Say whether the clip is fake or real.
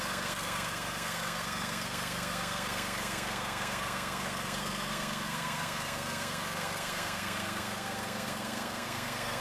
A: fake